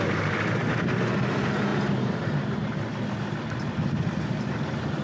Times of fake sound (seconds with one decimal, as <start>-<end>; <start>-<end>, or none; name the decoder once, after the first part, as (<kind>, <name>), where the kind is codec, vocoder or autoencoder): 0.0-0.6 (vocoder, BigVGAN v2); 1.2-5.0